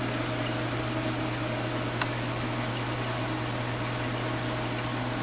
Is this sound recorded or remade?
recorded